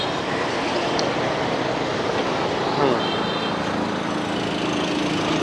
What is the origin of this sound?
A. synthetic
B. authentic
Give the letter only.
B